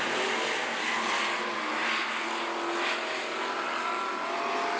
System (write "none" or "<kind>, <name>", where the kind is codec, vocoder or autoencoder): none